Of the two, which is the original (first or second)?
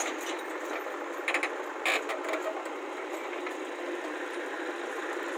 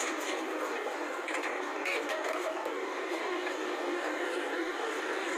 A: first